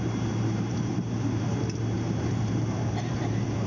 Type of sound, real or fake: fake